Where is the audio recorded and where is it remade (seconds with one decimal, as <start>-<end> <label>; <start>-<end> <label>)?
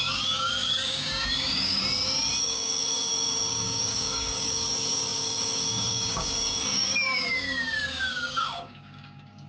0.0-1.8 remade; 1.8-2.4 recorded; 2.4-9.5 remade